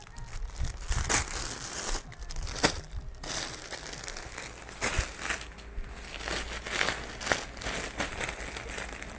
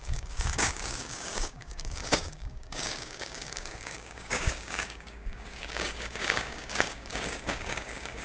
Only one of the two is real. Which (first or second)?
first